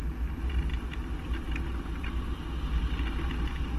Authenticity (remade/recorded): recorded